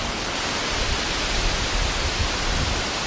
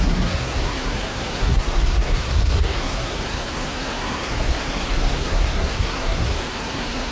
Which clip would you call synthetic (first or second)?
second